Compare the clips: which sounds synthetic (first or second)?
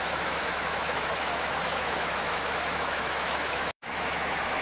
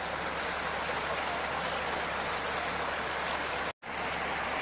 first